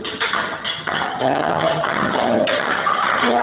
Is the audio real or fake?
fake